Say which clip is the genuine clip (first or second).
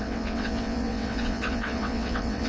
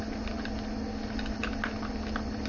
second